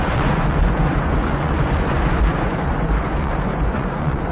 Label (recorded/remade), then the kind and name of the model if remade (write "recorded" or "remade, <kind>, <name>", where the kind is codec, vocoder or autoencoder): remade, vocoder, Vocos